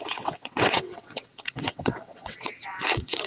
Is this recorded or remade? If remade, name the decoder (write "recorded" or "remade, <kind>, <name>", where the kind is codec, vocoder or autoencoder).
remade, vocoder, WaveNeXt